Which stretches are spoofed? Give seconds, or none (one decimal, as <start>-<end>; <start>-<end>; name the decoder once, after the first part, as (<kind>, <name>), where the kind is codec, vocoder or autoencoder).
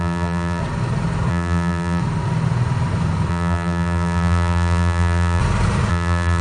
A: 0.0-0.6 (vocoder, BigVGAN v2); 1.3-2.0; 3.3-5.4; 5.9-6.4